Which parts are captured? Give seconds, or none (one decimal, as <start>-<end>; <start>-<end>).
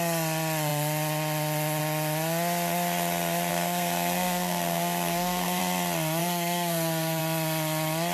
0.0-3.5; 5.6-6.2; 7.2-8.1